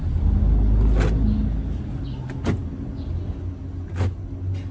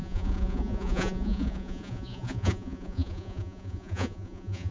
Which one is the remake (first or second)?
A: second